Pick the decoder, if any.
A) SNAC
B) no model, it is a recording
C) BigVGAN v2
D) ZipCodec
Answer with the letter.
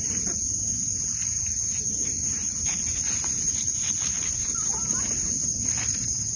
C